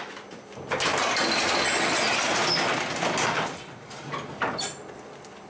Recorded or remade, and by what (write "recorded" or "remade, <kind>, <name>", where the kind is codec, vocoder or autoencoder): recorded